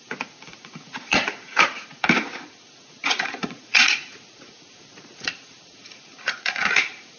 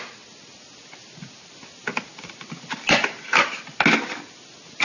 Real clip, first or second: second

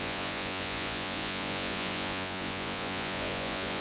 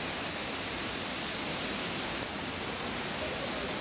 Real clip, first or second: second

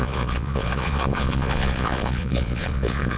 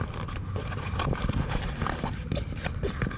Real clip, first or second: second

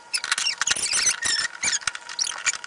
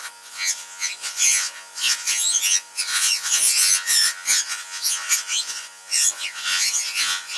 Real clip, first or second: first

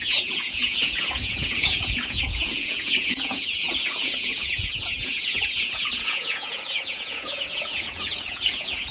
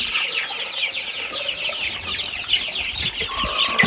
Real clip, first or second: second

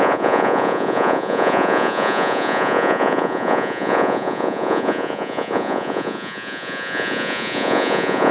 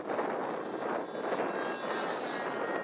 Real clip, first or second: second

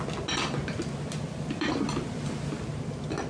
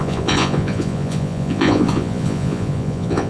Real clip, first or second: first